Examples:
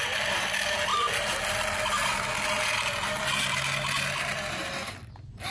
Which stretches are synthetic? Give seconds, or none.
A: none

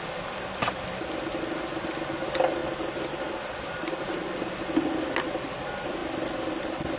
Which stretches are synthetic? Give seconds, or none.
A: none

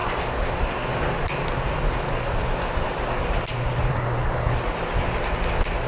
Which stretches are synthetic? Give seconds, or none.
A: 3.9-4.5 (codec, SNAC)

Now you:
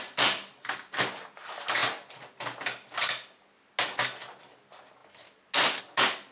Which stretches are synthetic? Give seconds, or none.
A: none

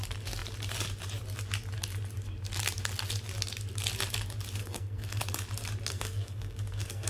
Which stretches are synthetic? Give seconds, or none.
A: 4.6-5.2 (codec, SNAC); 5.9-7.1

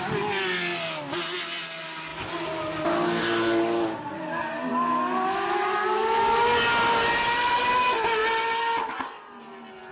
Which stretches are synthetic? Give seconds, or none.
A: none